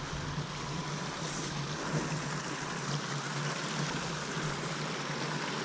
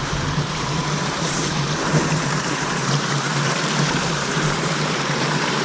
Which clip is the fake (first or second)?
second